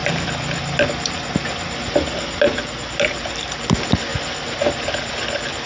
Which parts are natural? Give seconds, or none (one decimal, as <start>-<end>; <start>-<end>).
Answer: 0.0-5.7